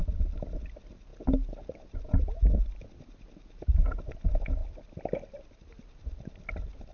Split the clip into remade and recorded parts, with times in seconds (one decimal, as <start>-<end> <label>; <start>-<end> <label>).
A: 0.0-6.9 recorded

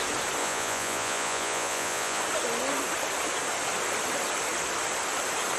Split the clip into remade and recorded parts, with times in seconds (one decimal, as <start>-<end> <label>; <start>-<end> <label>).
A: 0.0-0.4 recorded; 0.4-2.2 remade; 2.2-5.6 recorded

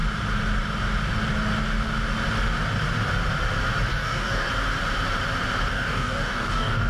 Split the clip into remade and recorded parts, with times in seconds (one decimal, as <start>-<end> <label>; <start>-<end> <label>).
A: 0.0-3.9 recorded; 3.9-4.5 remade; 4.5-5.7 recorded; 5.7-6.9 remade